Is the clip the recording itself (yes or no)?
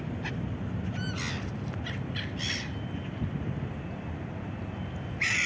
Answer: yes